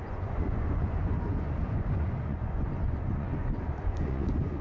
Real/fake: fake